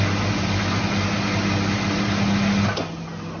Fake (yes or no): no